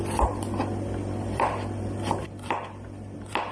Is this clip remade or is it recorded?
remade